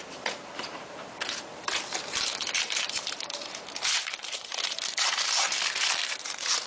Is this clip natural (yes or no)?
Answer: no